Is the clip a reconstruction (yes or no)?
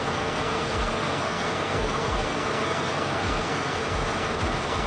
yes